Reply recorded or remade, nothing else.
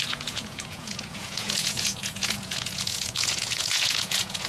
remade